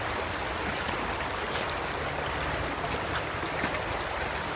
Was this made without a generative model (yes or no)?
yes